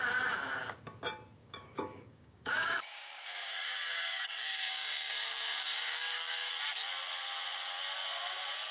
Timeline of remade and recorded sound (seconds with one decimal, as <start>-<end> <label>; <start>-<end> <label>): 0.0-1.4 recorded; 1.4-6.5 remade; 6.5-8.7 recorded